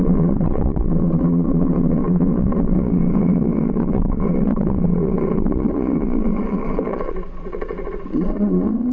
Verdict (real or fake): fake